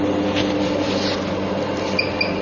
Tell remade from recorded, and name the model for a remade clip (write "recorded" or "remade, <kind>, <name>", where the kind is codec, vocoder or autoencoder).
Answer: recorded